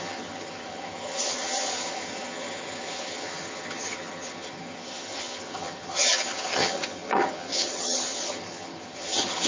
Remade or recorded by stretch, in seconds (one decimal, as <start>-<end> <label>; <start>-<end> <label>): 0.0-9.5 remade